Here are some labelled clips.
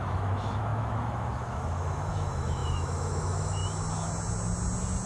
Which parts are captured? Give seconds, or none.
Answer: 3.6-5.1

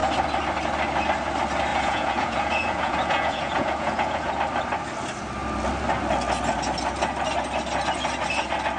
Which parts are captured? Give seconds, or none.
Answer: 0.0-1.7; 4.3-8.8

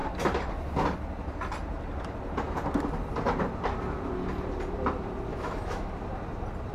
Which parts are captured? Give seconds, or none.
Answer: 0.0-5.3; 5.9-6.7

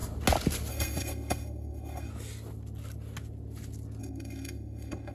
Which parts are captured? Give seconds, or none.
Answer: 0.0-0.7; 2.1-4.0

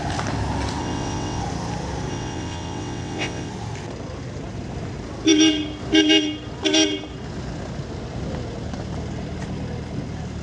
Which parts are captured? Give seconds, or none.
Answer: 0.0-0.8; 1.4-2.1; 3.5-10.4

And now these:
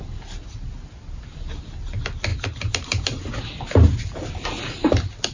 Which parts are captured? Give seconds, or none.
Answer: 0.0-2.3; 3.3-5.3

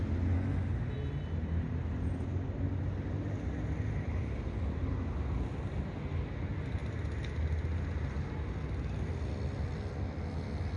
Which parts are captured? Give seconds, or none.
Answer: 0.0-10.8